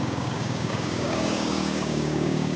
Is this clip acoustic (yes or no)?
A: no